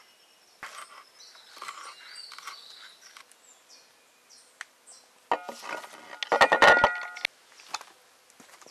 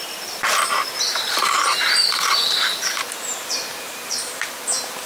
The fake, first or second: second